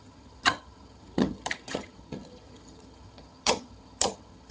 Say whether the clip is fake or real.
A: fake